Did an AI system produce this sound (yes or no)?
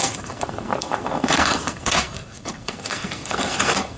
yes